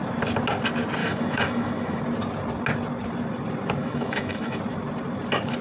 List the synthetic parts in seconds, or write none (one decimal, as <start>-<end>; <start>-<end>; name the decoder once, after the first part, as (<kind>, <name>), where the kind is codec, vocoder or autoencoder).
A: 1.0-2.0 (autoencoder, DAC-VAE); 3.8-4.6